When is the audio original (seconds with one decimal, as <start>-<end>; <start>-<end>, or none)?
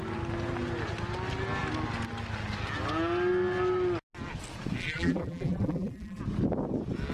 0.0-4.8; 6.2-7.1